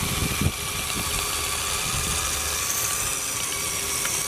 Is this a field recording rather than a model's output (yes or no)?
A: yes